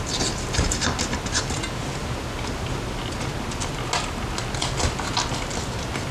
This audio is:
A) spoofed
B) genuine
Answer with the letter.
B